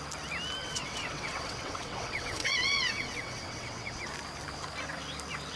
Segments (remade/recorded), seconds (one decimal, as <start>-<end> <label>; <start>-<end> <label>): 0.0-0.6 recorded; 0.6-4.0 remade; 4.0-5.6 recorded